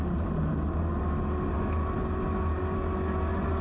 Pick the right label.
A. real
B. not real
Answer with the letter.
A